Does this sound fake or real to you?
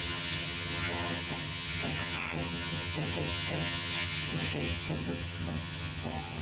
fake